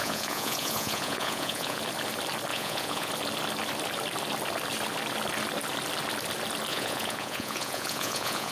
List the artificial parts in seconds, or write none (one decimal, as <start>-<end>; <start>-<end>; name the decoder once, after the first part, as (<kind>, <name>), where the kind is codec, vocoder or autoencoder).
0.0-1.8 (vocoder, Vocos); 2.5-3.1; 6.7-8.5